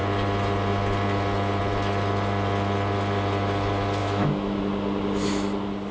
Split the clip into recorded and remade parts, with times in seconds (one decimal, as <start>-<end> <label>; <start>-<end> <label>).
0.0-4.0 recorded; 4.0-4.6 remade; 4.6-5.9 recorded